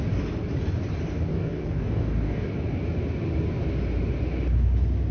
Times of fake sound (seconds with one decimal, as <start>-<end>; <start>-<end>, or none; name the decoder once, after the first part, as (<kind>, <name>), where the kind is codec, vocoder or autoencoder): 1.3-2.5 (codec, DAC)